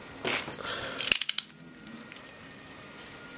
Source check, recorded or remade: recorded